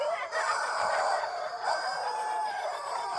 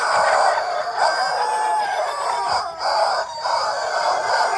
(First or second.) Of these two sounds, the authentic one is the second